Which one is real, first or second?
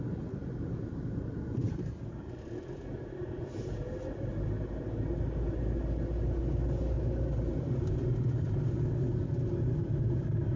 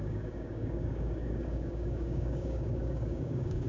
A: first